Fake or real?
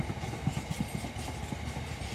real